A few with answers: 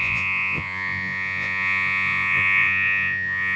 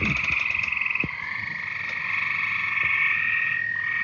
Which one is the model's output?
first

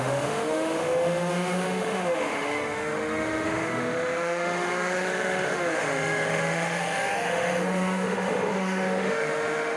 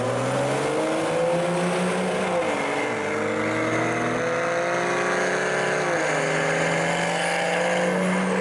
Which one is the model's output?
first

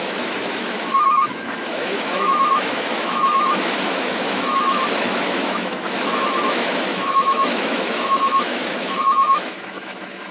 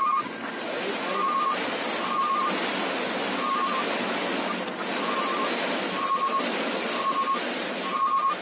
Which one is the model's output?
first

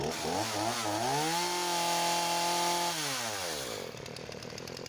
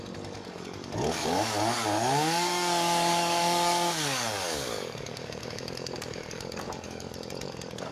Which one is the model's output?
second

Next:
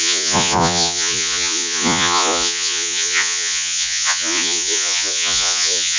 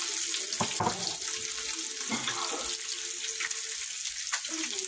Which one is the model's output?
first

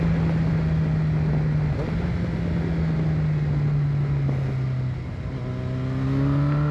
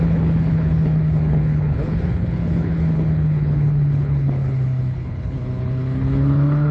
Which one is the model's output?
second